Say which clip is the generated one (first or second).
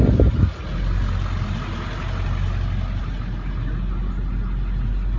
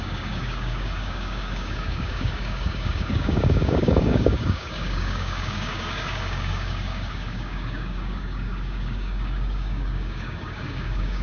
second